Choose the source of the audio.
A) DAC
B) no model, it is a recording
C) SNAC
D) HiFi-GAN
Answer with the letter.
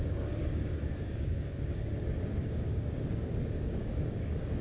A